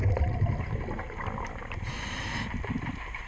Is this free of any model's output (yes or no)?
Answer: yes